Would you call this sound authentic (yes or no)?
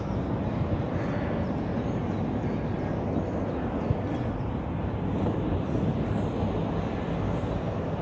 yes